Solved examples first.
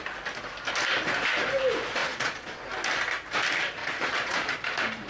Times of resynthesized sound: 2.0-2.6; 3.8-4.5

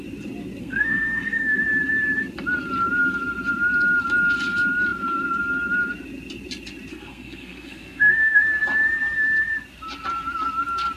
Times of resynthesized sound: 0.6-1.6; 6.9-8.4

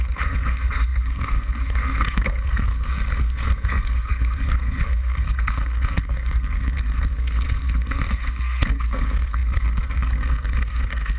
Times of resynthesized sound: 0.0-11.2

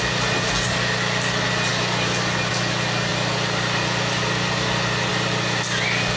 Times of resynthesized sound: none

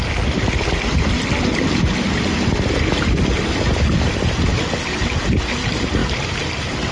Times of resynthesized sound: none

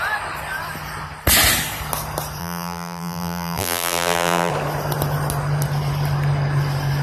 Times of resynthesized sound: 2.4-4.5

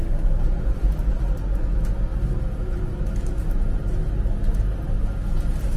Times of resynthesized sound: none

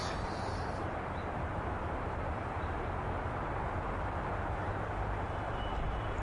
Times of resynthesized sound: 0.0-6.2